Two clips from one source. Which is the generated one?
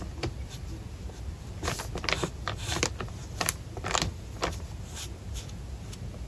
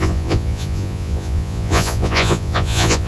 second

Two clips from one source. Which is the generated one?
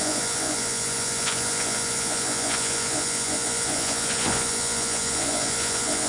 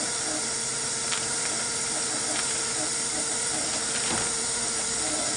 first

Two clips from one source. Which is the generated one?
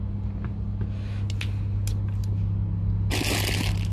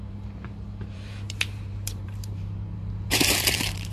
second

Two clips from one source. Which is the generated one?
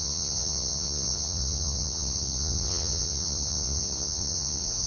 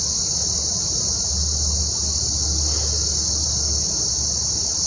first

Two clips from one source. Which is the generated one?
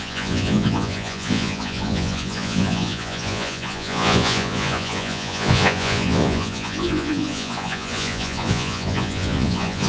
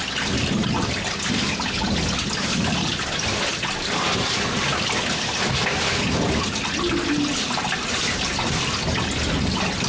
first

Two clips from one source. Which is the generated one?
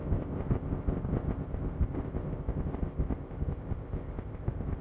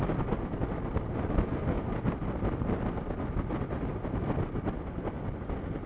first